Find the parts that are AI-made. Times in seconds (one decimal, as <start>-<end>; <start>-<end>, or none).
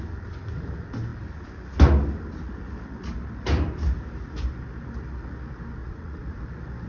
5.8-6.4